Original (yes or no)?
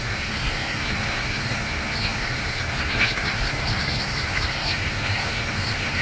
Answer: no